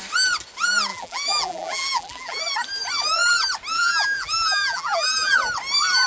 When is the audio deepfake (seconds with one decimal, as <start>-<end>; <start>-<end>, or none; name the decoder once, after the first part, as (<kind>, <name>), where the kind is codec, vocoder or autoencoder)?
0.9-2.4 (vocoder, BigVGAN v2); 3.7-5.3

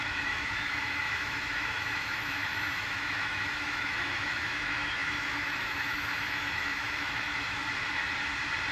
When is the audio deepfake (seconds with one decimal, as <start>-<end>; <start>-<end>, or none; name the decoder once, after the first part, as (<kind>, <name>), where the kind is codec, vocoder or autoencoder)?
0.0-7.6 (autoencoder, DAC-VAE)

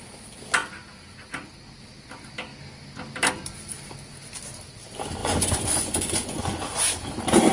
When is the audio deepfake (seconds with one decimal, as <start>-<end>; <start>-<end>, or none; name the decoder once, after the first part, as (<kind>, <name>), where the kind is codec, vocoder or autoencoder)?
5.2-6.4 (vocoder, Vocos)

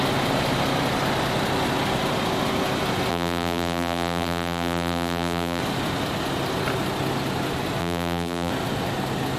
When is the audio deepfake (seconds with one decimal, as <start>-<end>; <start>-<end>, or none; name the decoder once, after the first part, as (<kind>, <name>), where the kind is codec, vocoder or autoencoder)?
3.1-5.6 (vocoder, BigVGAN v2); 7.8-8.5

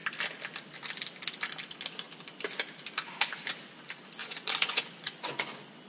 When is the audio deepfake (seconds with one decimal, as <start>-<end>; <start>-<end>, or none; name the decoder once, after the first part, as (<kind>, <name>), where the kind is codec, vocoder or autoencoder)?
4.2-5.9 (vocoder, Vocos)

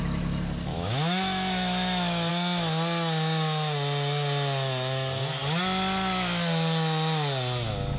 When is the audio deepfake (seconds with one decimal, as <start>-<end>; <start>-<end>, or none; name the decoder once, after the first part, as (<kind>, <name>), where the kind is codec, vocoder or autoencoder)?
0.7-2.3 (autoencoder, DAC-VAE)

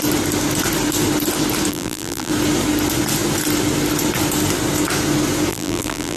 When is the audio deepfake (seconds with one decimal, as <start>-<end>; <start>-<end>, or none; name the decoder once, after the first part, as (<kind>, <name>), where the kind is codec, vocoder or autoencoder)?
1.7-2.3 (vocoder, BigVGAN v2); 5.5-6.2